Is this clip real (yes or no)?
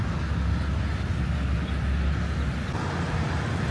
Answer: yes